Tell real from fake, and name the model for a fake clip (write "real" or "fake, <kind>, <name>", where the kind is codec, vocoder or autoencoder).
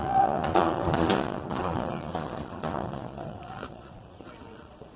fake, vocoder, Vocos